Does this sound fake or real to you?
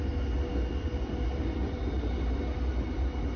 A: real